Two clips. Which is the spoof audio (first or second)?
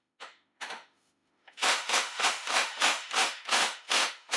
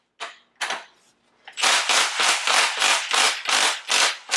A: first